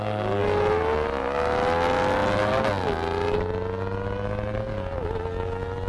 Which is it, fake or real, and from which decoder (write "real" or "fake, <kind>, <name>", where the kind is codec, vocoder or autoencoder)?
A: real